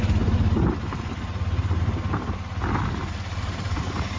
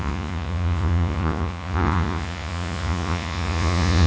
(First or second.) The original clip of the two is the first